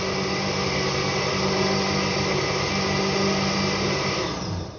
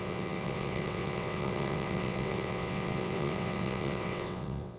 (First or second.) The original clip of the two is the first